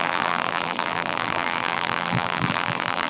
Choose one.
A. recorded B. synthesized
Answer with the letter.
B